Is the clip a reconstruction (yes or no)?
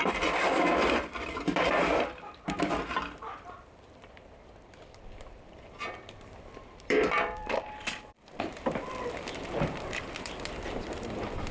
yes